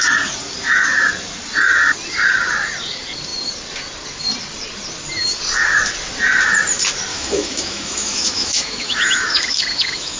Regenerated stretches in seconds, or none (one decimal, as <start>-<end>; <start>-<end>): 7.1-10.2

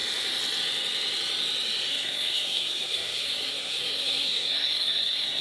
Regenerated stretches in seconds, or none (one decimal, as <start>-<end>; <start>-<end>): 1.9-5.4

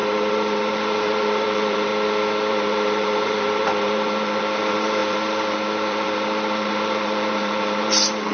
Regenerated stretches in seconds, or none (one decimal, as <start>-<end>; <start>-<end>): 0.0-1.9; 2.5-8.3

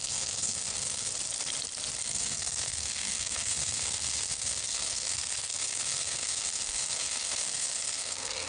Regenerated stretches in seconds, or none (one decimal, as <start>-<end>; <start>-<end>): 0.0-1.1; 2.0-8.5

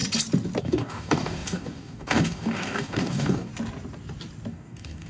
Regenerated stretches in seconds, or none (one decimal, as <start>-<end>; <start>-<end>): 0.6-3.5; 4.5-5.1

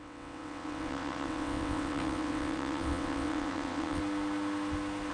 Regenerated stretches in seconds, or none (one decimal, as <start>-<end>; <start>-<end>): 0.0-4.0

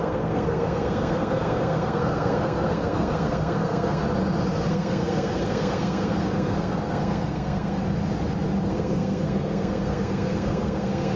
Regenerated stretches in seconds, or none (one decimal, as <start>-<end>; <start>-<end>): 0.0-4.0; 4.7-7.8; 8.7-11.2

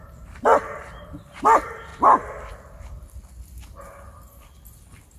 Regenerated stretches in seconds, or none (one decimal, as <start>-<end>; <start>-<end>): 0.0-1.9